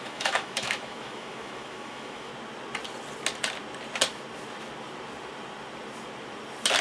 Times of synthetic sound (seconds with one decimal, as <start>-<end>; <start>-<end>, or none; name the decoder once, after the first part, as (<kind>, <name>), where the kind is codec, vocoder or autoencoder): 0.0-2.3 (autoencoder, DAC-VAE)